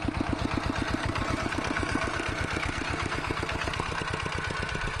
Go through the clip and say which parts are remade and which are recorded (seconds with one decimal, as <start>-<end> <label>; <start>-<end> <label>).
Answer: 0.0-1.0 recorded; 1.0-4.0 remade; 4.0-5.0 recorded